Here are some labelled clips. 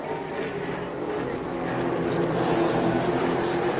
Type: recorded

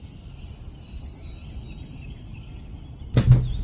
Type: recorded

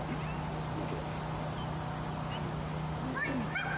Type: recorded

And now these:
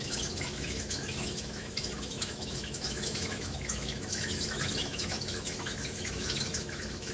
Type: remade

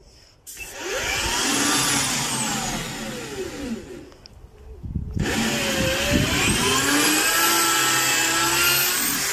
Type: recorded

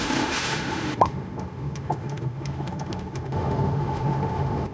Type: remade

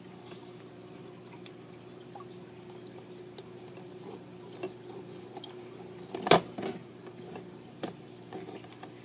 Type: recorded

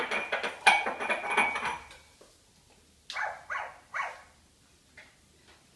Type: recorded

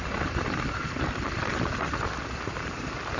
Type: recorded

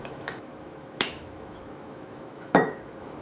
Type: remade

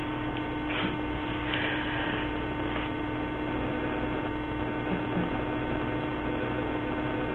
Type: recorded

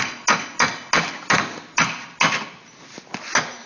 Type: recorded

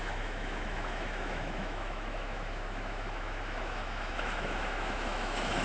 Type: remade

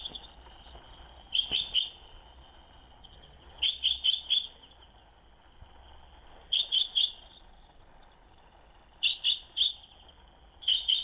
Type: recorded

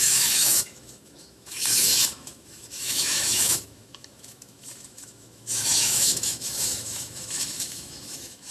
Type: remade